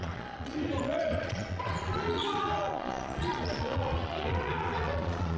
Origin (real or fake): fake